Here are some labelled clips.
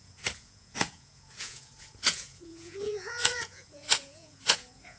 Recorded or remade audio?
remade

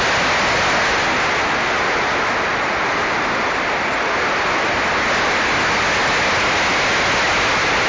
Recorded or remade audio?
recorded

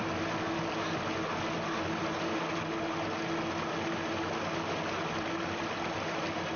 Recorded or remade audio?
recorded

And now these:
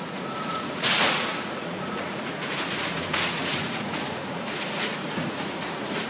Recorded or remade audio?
remade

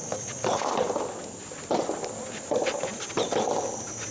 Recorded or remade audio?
recorded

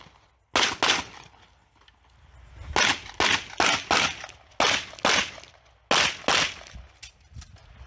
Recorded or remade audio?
recorded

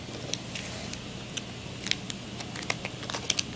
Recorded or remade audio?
recorded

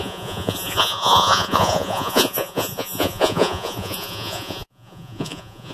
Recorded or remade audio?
remade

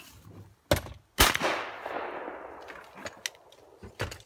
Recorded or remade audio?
recorded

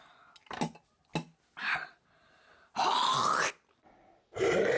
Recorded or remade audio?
recorded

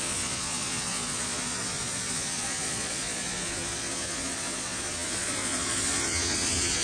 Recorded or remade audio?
remade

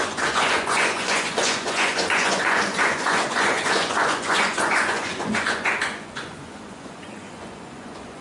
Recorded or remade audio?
remade